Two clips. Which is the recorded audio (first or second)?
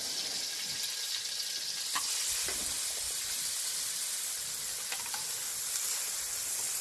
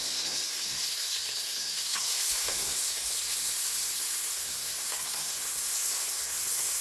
first